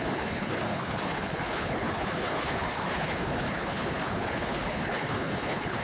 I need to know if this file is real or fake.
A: fake